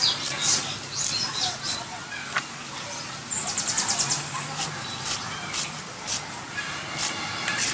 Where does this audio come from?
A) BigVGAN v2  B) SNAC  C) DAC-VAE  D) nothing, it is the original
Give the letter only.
D